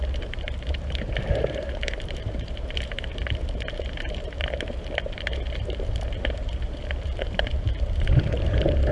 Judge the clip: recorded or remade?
remade